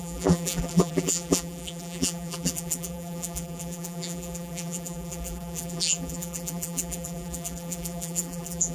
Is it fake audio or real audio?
fake